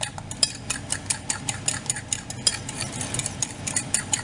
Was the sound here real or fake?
fake